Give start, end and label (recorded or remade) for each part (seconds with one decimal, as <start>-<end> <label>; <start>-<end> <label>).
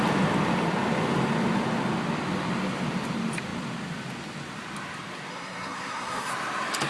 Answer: 0.0-5.3 recorded; 5.3-6.3 remade; 6.3-6.9 recorded